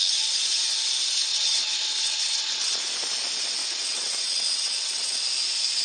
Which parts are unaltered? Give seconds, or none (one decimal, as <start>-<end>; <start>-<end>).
0.0-1.3; 2.8-3.6; 5.2-5.8